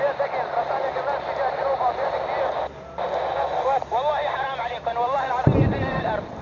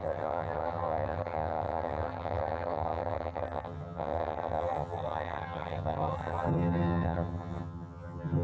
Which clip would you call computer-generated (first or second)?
second